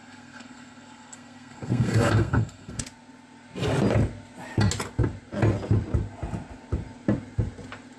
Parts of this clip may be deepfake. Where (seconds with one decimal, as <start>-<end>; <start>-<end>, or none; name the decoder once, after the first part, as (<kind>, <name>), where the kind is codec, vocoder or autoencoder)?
0.0-2.8 (codec, SNAC)